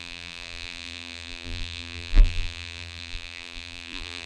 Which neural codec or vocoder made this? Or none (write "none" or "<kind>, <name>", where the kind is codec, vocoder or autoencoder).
vocoder, BigVGAN v2